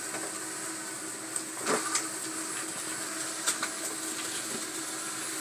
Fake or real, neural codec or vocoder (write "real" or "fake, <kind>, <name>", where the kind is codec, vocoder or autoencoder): real